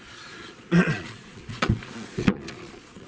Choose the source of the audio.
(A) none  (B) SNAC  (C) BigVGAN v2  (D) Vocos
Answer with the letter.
D